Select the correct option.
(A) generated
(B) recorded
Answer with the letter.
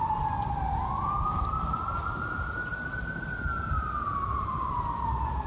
B